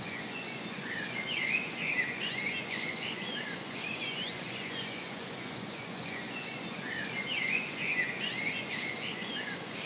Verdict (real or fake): fake